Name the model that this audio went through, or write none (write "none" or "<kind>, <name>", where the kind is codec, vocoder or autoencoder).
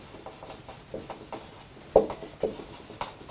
none